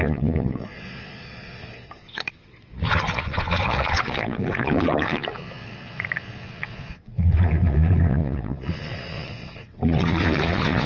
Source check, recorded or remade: remade